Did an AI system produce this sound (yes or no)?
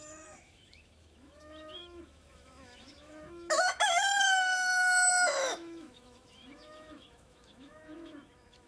yes